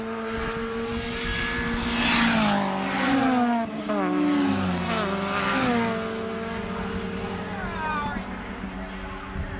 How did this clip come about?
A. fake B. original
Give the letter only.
B